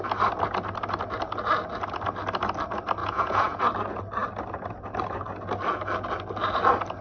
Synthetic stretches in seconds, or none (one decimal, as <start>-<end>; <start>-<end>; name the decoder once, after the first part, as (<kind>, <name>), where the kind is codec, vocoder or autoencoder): 3.0-3.6 (vocoder, Vocos)